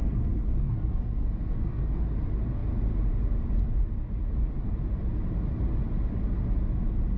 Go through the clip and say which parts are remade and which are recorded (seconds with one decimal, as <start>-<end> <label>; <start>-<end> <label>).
0.0-2.0 remade; 2.0-7.2 recorded